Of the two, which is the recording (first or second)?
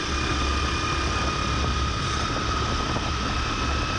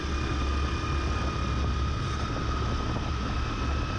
second